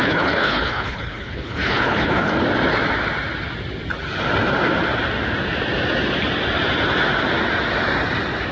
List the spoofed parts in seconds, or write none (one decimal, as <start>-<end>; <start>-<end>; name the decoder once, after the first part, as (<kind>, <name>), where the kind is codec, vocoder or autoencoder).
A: 0.0-2.3 (codec, HILCodec)